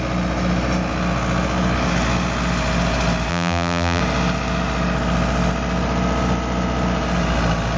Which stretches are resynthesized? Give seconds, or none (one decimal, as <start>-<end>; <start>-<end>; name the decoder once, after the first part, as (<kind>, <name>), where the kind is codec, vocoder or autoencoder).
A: 3.3-4.0 (vocoder, BigVGAN v2)